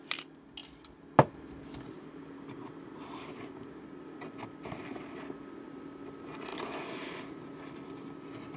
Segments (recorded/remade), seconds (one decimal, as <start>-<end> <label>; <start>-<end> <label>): 0.0-8.6 recorded